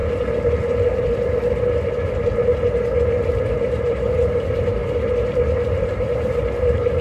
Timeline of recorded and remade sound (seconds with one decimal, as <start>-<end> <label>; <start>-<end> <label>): 0.0-3.3 recorded; 3.3-4.8 remade; 4.8-5.8 recorded; 5.8-7.0 remade